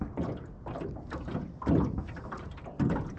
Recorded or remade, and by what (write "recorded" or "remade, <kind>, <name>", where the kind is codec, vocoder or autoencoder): recorded